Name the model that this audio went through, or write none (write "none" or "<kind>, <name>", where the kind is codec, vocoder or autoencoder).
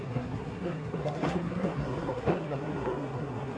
codec, SNAC